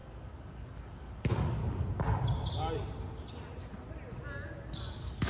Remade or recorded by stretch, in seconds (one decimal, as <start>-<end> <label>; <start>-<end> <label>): 0.0-1.6 remade; 1.6-4.8 recorded; 4.8-5.3 remade

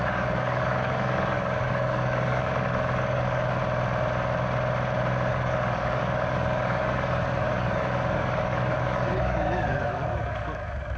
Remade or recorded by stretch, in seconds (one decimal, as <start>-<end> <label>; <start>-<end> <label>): 0.0-3.6 remade; 3.6-5.3 recorded; 5.3-11.0 remade